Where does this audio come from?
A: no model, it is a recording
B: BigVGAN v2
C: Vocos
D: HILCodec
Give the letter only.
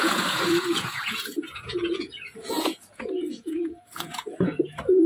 C